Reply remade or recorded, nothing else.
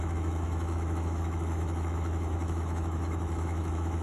remade